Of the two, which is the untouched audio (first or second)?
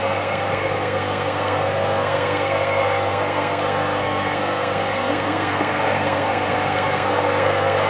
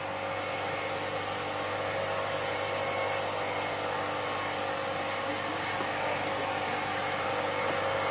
second